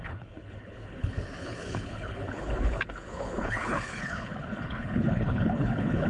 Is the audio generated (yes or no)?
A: yes